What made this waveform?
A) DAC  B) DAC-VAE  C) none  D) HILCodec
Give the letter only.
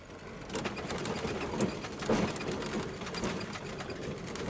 C